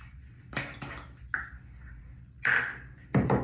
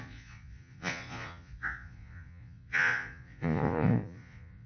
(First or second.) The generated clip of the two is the second